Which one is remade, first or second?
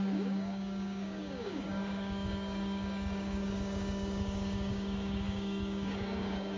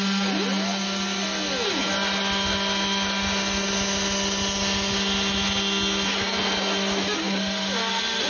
first